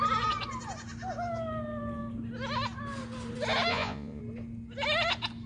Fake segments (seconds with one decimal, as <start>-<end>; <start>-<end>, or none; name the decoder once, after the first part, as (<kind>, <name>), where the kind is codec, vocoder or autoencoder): 3.7-4.2 (vocoder, Vocos)